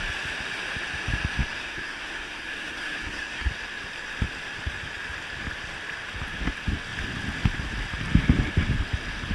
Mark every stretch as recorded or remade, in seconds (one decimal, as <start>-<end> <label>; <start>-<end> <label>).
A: 0.0-1.6 recorded; 1.6-3.5 remade; 3.5-9.3 recorded